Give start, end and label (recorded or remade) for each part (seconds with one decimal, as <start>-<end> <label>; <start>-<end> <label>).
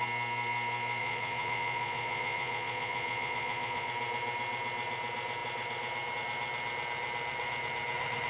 0.0-1.0 recorded; 1.0-3.9 remade; 3.9-8.3 recorded